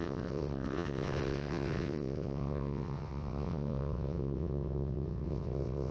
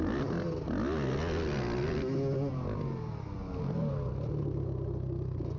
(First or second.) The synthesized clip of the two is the first